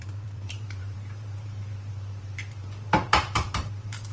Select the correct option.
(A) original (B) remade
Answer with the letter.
B